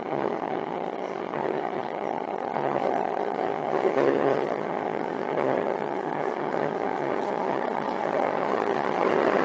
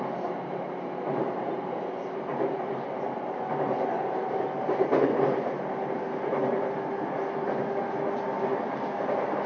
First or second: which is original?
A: second